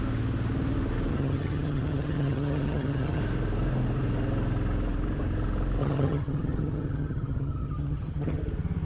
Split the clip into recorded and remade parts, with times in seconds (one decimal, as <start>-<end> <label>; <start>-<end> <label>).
0.0-1.1 recorded; 1.1-3.2 remade; 3.2-5.8 recorded; 5.8-8.4 remade; 8.4-8.8 recorded